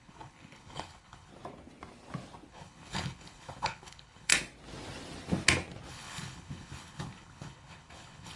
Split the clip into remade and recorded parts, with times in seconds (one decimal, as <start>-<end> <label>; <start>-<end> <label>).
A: 0.0-1.3 remade; 1.3-2.5 recorded; 2.5-4.3 remade; 4.3-5.9 recorded; 5.9-8.4 remade